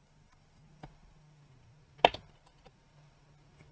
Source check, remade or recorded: recorded